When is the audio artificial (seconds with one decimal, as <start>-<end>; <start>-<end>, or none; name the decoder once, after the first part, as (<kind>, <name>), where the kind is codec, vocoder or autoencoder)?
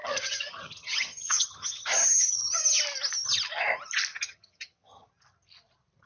0.0-2.8 (vocoder, HiFi-GAN); 4.1-5.1